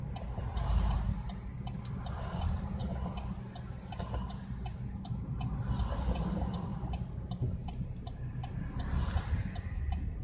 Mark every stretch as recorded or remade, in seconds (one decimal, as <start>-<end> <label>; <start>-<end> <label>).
0.0-10.2 recorded